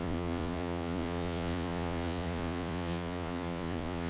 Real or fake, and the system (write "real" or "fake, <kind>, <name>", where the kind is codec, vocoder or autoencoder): fake, vocoder, Vocos